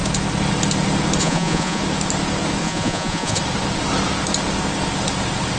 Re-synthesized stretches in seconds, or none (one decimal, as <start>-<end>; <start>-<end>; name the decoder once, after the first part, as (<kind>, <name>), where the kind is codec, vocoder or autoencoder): 1.2-1.8 (vocoder, Vocos); 2.6-3.4